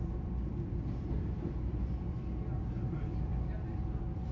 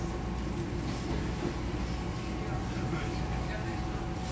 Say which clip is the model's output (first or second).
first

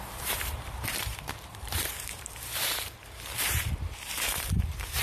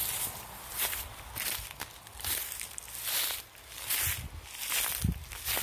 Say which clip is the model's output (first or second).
first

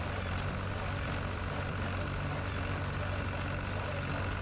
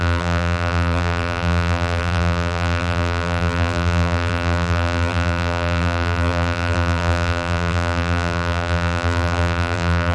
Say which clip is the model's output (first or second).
second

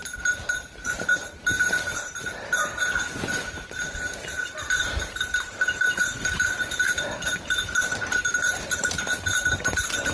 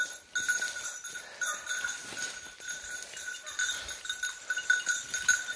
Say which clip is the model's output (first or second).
first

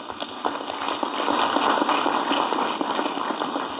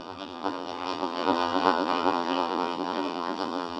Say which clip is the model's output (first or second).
second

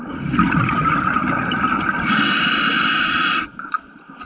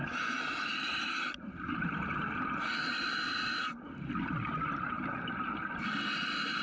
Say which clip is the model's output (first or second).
first